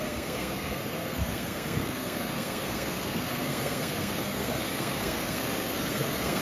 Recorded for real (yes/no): no